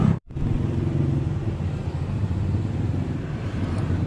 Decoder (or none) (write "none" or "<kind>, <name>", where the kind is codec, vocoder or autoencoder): vocoder, BigVGAN v2